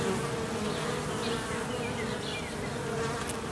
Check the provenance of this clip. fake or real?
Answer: real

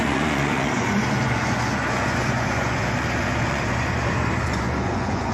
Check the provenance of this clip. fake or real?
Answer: fake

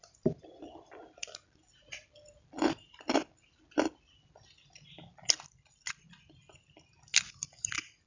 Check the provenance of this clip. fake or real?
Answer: real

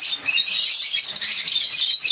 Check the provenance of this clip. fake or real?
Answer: real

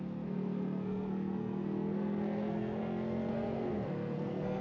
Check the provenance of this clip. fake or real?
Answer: fake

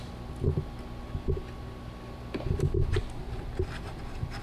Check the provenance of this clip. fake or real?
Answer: real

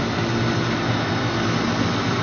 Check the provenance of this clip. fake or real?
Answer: real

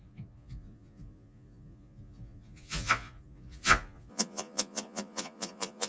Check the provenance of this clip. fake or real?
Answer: fake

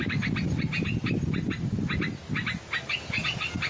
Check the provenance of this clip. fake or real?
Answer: real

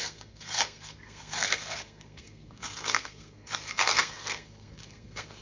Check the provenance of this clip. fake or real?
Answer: fake